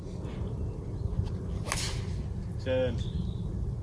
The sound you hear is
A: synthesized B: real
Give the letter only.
B